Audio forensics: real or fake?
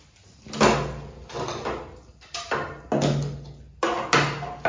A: real